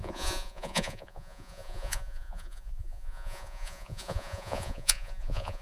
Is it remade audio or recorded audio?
remade